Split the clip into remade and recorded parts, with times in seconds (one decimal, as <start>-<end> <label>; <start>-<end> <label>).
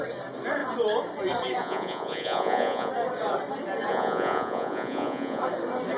0.0-1.6 recorded; 1.6-2.9 remade; 2.9-3.9 recorded; 3.9-5.4 remade; 5.4-6.0 recorded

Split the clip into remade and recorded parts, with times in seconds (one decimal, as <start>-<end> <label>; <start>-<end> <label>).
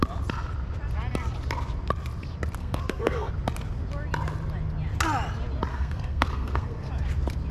0.0-2.6 recorded; 2.6-3.3 remade; 3.3-5.7 recorded; 5.7-6.9 remade; 6.9-7.5 recorded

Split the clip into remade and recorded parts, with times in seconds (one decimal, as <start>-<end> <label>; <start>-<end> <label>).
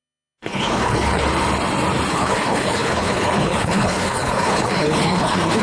0.0-1.2 remade; 1.2-2.1 recorded; 2.1-5.6 remade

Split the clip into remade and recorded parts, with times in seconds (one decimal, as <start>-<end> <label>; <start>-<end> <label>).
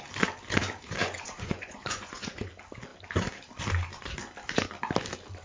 0.0-1.0 recorded; 1.0-2.5 remade; 2.5-5.4 recorded